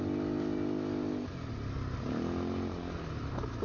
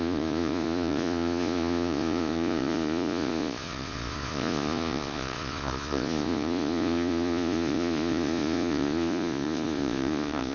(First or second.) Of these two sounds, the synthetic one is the second